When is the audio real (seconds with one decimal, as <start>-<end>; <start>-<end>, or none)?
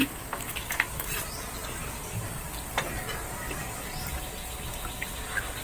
1.1-5.6